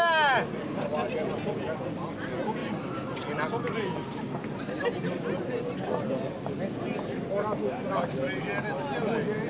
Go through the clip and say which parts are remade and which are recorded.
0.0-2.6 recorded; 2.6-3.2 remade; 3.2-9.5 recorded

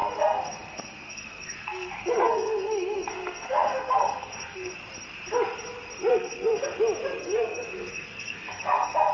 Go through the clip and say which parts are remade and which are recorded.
0.0-4.7 remade; 4.7-6.1 recorded; 6.1-6.8 remade; 6.8-7.2 recorded; 7.2-9.1 remade